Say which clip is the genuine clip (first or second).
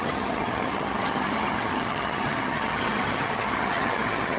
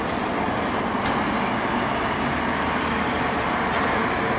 second